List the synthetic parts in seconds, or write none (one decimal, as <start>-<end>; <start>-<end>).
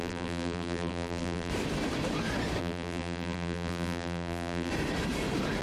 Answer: 0.0-1.5; 2.6-4.7